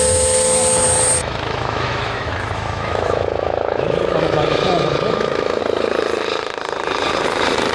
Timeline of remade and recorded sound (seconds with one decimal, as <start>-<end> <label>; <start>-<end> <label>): 0.0-1.2 recorded; 1.2-5.6 remade; 5.6-7.7 recorded